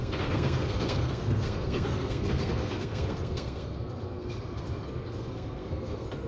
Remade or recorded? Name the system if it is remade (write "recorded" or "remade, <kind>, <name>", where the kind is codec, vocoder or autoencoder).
remade, codec, SNAC